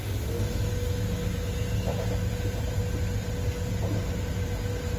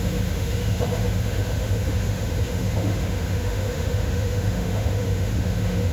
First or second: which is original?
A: first